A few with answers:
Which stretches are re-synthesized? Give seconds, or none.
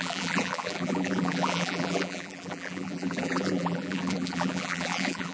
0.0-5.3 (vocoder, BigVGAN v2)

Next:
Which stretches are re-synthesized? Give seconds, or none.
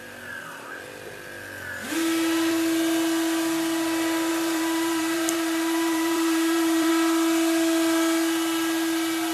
4.3-6.9 (vocoder, BigVGAN v2)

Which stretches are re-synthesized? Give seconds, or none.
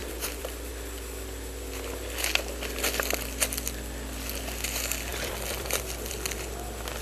0.0-0.7 (vocoder, BigVGAN v2); 5.1-6.1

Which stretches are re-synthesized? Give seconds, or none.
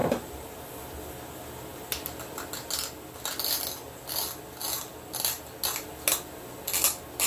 0.0-0.7 (vocoder, BigVGAN v2)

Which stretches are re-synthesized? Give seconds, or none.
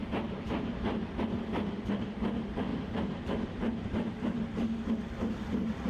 0.0-1.0 (vocoder, BigVGAN v2); 2.7-4.1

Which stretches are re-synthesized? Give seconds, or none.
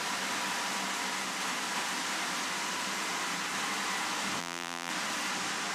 4.4-4.9 (vocoder, BigVGAN v2)